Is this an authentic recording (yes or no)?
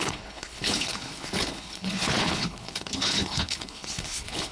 no